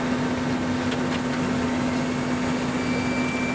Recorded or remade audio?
recorded